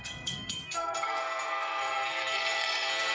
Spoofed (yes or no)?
yes